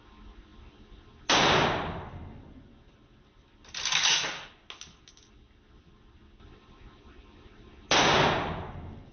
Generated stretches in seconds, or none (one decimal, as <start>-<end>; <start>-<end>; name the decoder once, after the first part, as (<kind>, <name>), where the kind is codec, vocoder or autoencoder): none

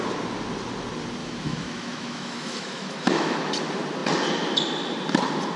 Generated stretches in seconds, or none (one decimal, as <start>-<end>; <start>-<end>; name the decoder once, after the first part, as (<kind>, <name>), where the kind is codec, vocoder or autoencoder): 1.2-3.5 (autoencoder, DAC-VAE)

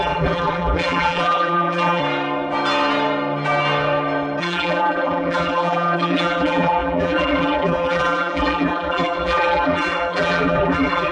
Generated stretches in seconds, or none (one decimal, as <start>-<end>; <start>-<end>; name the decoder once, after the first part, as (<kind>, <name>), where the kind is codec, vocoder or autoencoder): 0.0-2.0 (vocoder, BigVGAN v2); 4.4-11.1

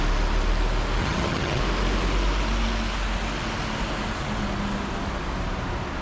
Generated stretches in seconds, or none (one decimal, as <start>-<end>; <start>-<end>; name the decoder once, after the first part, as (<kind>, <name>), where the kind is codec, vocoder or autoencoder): 1.0-1.6 (vocoder, HiFi-GAN)